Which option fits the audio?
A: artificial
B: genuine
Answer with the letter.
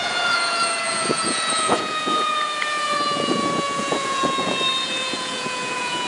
A